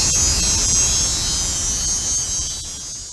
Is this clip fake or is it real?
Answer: real